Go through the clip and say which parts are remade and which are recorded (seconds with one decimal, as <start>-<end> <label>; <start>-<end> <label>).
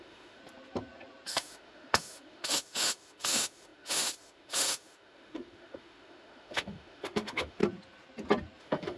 0.0-0.4 remade; 0.4-1.3 recorded; 1.3-7.6 remade; 7.6-8.6 recorded; 8.6-9.0 remade